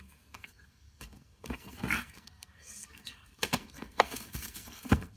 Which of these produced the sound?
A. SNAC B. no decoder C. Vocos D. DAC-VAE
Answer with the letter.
A